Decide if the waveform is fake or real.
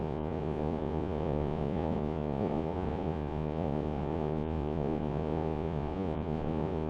fake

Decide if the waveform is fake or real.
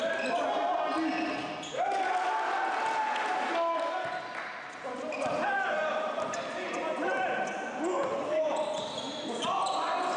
real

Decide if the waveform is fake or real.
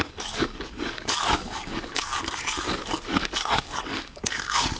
fake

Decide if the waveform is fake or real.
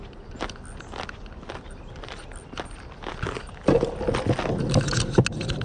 real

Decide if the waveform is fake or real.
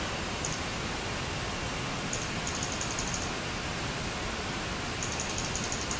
real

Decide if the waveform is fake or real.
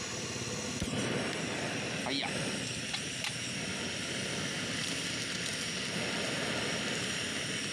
real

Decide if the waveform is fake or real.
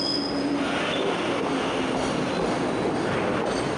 real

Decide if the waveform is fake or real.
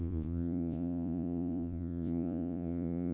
fake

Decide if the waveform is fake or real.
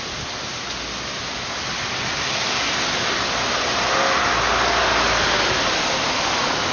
real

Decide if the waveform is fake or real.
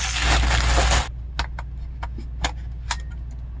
real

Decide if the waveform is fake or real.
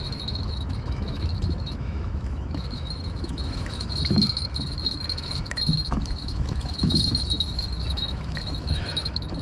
fake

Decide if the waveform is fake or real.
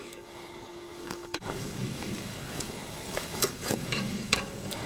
fake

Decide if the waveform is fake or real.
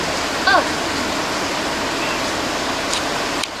real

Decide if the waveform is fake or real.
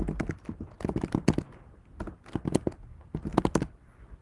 real